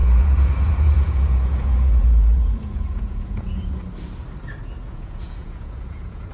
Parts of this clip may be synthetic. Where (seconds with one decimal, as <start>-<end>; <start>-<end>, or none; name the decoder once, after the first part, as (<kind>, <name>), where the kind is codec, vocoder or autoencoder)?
0.0-3.8 (vocoder, Vocos); 4.6-6.3